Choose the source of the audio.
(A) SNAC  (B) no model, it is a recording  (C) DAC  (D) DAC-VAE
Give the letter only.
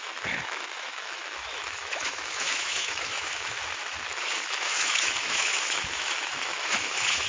D